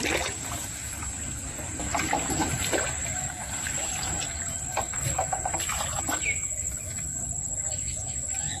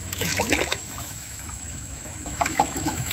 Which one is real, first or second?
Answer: first